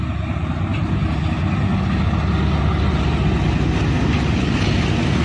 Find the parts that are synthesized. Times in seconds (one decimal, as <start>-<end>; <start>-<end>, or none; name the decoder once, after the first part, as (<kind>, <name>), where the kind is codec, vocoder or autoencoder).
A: none

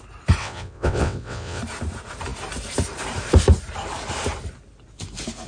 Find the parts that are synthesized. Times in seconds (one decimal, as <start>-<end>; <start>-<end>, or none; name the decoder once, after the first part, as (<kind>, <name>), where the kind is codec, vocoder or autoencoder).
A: 0.4-1.6 (vocoder, WaveNeXt)

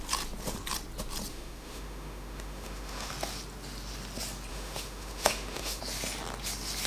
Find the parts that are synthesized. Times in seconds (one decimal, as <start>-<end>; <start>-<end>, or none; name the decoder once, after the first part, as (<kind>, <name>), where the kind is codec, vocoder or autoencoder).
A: 1.3-3.1 (autoencoder, DAC-VAE); 4.5-5.8

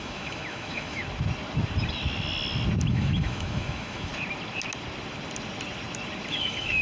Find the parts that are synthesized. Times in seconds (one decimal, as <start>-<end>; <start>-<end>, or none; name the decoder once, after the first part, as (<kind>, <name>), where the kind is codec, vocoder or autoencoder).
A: 0.0-1.0 (autoencoder, DAC-VAE); 2.9-4.1; 6.3-6.8